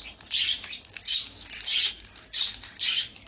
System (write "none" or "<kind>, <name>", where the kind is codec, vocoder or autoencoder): none